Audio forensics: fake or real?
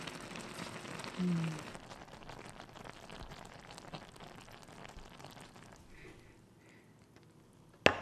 real